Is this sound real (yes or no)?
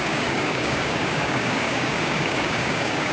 no